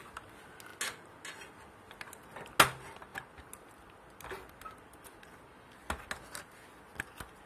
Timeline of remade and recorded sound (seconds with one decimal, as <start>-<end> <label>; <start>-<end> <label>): 0.0-7.5 recorded